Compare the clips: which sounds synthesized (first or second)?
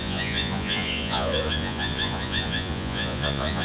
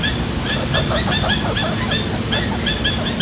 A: first